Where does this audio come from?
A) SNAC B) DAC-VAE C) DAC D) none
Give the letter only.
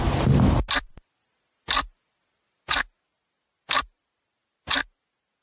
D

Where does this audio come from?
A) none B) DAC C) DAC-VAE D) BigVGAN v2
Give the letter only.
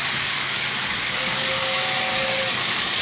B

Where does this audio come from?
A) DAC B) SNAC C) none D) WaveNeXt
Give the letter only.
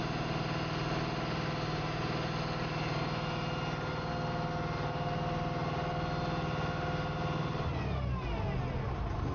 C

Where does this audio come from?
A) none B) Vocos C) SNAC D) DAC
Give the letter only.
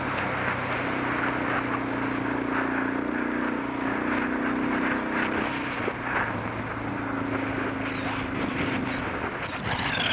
A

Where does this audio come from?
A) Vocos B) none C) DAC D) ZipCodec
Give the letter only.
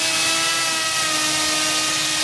B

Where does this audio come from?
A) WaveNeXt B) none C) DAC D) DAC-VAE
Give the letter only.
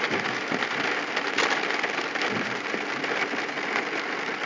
B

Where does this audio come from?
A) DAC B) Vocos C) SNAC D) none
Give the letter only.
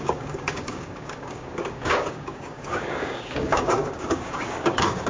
A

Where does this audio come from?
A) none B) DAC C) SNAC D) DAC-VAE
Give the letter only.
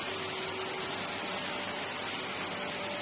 A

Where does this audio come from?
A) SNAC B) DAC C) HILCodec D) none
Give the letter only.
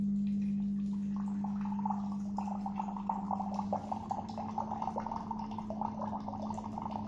D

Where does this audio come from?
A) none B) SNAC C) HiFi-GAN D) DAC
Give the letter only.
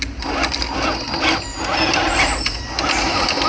A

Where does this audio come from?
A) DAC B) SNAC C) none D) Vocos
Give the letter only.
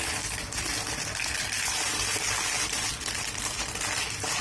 C